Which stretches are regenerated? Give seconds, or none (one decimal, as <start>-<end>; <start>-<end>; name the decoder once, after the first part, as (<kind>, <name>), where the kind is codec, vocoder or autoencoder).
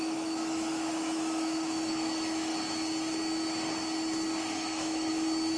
0.0-2.5 (autoencoder, DAC-VAE); 4.4-5.1